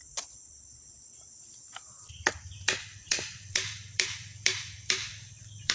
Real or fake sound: fake